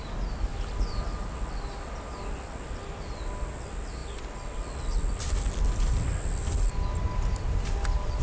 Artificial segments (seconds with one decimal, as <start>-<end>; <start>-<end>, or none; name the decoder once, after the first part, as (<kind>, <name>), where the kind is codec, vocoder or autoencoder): none